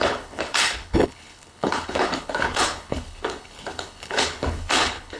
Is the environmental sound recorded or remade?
remade